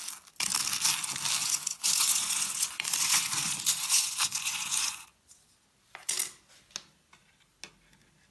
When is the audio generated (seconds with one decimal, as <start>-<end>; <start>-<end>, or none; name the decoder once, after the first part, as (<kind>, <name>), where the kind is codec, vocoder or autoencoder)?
1.4-5.3 (vocoder, Vocos)